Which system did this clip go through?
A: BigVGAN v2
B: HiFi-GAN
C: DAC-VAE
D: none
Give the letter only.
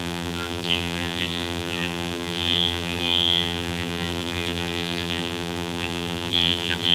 A